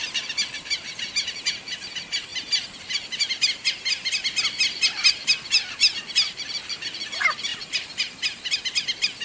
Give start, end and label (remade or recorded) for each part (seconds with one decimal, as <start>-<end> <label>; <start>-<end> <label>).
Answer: 0.0-9.2 recorded